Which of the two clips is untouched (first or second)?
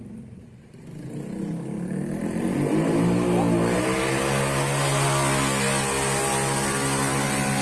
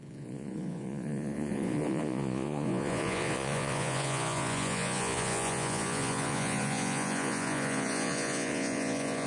first